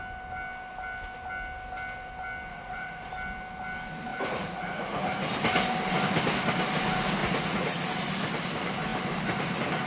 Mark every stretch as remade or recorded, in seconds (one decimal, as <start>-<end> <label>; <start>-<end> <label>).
0.0-2.5 recorded; 2.5-3.1 remade; 3.1-4.1 recorded; 4.1-5.1 remade; 5.1-7.2 recorded; 7.2-7.9 remade; 7.9-9.9 recorded